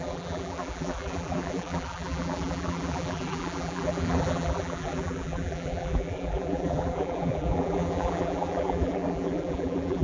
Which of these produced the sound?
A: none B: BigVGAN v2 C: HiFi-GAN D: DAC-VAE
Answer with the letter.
B